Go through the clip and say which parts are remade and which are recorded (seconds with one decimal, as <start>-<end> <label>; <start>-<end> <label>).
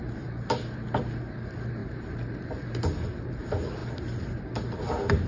0.0-5.3 recorded